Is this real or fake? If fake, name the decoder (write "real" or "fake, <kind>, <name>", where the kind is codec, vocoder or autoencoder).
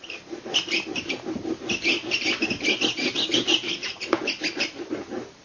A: real